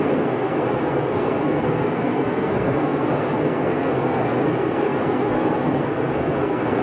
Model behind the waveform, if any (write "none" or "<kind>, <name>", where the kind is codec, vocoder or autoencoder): codec, SNAC